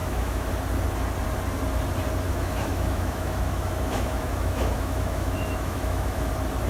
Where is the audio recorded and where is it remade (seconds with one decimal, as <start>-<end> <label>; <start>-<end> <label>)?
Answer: 0.0-0.5 remade; 0.5-2.3 recorded; 2.3-6.3 remade; 6.3-6.7 recorded